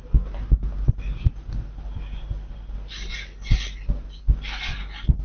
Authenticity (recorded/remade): recorded